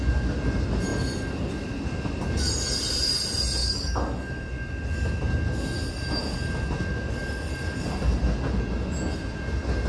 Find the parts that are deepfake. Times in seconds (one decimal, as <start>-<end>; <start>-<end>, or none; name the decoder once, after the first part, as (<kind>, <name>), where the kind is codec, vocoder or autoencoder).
3.6-4.5 (codec, DAC)

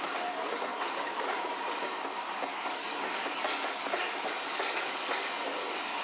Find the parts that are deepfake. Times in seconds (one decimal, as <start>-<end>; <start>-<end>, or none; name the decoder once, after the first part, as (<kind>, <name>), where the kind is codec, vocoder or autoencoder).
0.7-1.4 (codec, DAC); 2.5-6.0

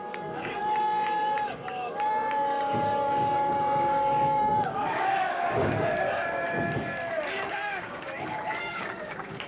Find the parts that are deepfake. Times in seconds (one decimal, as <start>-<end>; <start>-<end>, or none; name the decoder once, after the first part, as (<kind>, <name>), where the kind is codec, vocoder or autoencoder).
0.0-9.5 (codec, DAC)

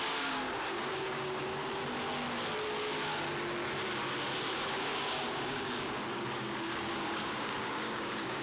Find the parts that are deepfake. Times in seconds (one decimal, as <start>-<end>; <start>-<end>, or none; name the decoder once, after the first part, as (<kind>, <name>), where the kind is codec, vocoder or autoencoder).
0.0-1.6 (codec, DAC); 4.4-8.4

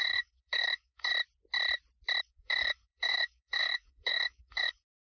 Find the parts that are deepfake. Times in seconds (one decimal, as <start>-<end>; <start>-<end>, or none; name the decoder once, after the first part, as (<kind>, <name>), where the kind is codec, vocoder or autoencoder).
0.0-1.1 (codec, DAC); 2.2-5.0

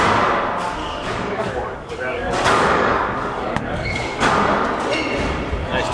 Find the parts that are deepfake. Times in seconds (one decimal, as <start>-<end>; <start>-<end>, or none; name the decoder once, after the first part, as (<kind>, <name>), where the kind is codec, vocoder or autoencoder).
0.8-4.3 (codec, DAC)

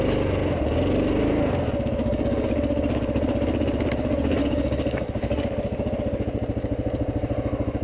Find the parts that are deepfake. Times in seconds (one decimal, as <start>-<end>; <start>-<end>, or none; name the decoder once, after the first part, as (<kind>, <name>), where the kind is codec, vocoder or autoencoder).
2.0-2.5 (codec, DAC); 4.4-5.1